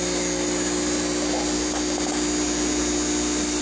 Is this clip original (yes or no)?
yes